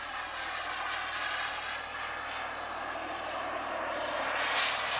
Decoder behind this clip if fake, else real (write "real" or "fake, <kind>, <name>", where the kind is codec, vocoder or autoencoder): real